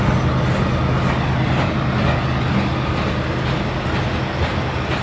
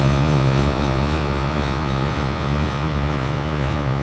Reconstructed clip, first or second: second